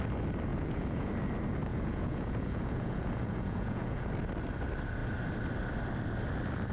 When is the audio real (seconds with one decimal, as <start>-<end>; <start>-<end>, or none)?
0.0-0.5; 1.1-1.7; 4.1-6.7